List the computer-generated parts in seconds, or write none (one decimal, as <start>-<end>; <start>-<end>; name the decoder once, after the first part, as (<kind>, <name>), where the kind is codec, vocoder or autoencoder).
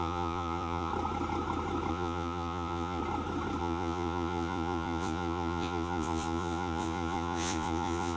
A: 0.0-0.9 (vocoder, Vocos); 1.9-3.0; 3.6-8.2